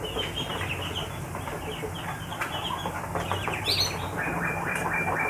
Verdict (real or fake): real